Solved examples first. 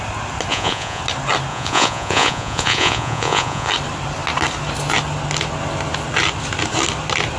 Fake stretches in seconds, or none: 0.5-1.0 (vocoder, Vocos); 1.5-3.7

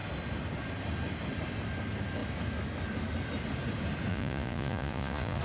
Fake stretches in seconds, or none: 4.1-5.4 (vocoder, Vocos)

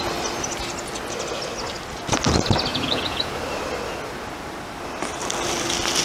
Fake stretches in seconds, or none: 2.7-3.3 (vocoder, Vocos)

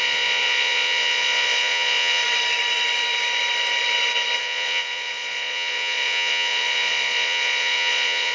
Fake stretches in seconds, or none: 0.0-2.2 (vocoder, Vocos); 4.4-8.3

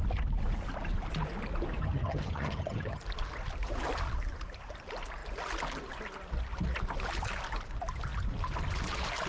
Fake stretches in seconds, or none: 1.8-3.0 (vocoder, HiFi-GAN)